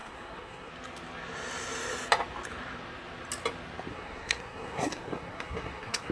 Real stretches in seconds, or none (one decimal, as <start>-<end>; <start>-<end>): 0.7-3.9